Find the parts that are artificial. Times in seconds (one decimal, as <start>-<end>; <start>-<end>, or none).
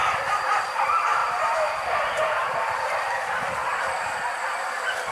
0.0-0.6; 1.2-3.2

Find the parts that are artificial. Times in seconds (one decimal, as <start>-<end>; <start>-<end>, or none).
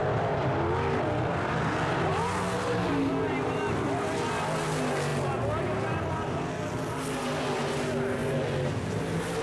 none